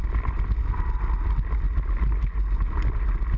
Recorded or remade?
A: recorded